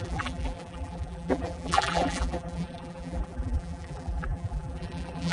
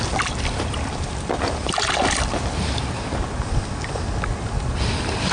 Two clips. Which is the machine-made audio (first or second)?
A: first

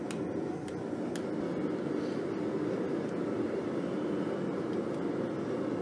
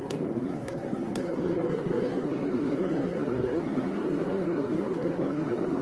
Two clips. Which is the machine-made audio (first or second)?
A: second